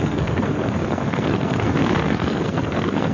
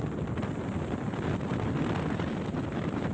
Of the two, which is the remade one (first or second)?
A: first